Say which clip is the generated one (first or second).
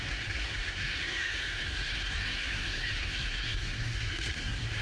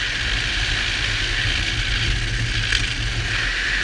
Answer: first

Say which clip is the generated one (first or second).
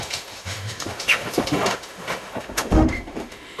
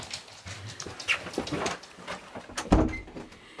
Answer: first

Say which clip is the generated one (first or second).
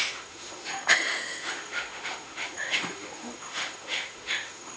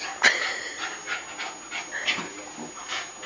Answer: first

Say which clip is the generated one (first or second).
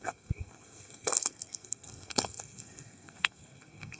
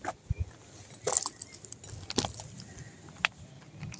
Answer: first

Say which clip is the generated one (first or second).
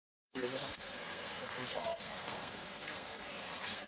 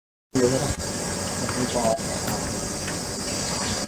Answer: first